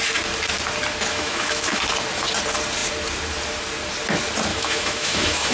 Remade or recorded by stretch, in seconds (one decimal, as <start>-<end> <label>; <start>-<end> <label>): 0.0-1.1 recorded; 1.1-1.8 remade; 1.8-4.5 recorded; 4.5-5.5 remade

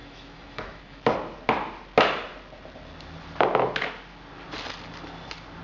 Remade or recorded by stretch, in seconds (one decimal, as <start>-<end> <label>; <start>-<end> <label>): 0.0-1.0 remade; 1.0-5.6 recorded

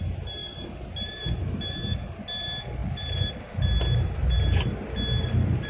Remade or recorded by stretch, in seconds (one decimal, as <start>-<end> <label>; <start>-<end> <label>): 0.0-2.8 recorded; 2.8-3.4 remade; 3.4-4.2 recorded; 4.2-4.7 remade; 4.7-5.7 recorded

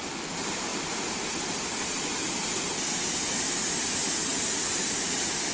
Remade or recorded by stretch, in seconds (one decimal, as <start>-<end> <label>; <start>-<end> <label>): 0.0-5.5 recorded

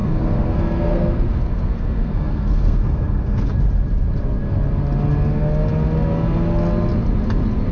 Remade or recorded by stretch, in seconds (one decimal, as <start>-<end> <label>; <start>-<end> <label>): 0.0-3.5 remade; 3.5-7.7 recorded